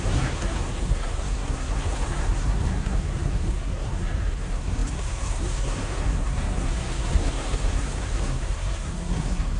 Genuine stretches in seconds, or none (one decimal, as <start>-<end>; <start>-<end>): none